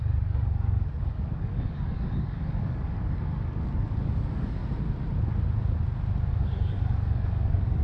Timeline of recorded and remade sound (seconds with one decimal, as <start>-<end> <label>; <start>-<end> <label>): 0.0-4.6 remade; 4.6-6.3 recorded; 6.3-7.8 remade